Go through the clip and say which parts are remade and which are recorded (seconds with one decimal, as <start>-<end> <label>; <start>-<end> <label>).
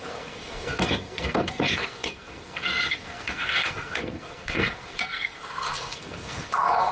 0.0-6.9 remade